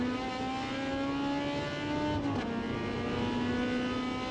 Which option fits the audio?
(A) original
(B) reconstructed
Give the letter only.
A